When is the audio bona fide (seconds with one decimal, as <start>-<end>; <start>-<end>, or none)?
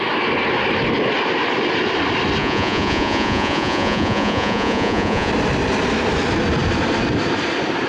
0.0-2.4; 5.3-7.9